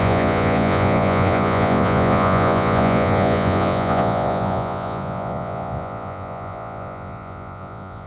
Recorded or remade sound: remade